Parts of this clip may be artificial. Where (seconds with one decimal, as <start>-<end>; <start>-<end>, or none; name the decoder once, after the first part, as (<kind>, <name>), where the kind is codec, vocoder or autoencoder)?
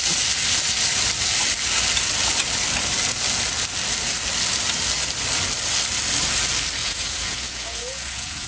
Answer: 6.8-8.5 (vocoder, Vocos)